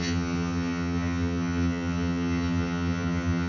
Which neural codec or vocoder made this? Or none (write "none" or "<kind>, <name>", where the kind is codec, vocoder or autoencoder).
vocoder, HiFi-GAN